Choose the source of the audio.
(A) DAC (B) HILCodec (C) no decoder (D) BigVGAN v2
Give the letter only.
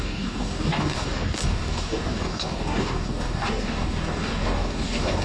A